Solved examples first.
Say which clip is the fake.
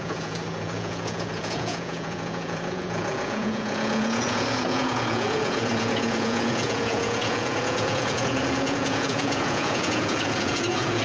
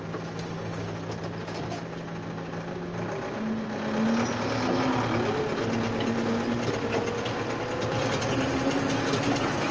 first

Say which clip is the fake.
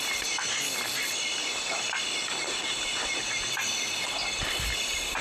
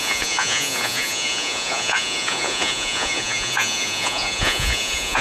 second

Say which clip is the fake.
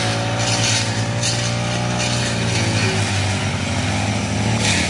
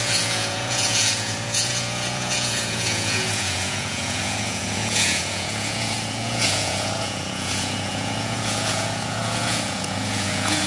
second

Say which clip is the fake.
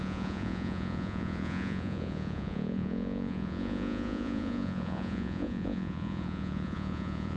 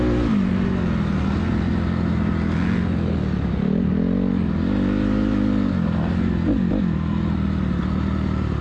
first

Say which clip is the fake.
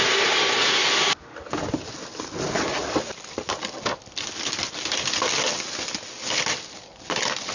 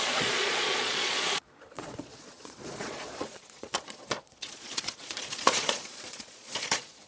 second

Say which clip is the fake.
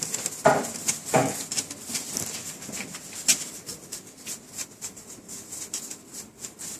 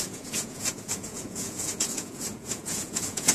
second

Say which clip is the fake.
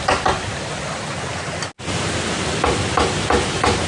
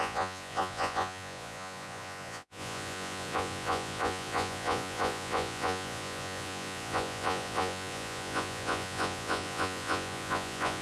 second